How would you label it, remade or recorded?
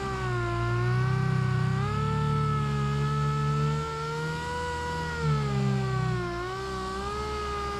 recorded